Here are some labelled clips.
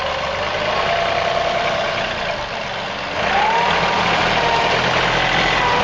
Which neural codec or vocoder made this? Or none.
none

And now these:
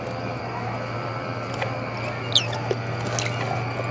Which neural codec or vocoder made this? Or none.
none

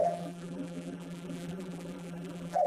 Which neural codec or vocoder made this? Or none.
vocoder, BigVGAN v2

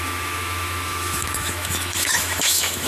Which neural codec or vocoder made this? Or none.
autoencoder, DAC-VAE